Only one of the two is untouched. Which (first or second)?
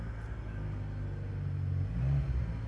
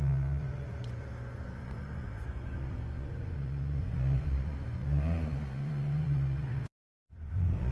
first